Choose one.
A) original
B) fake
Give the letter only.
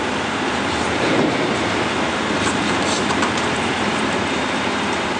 B